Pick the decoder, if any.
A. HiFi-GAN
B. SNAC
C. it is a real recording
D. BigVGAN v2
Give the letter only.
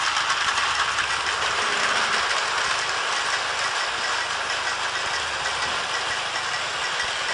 C